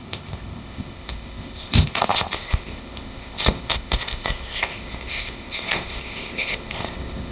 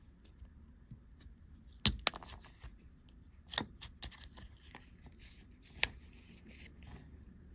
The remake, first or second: first